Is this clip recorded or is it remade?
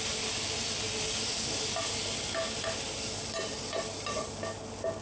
recorded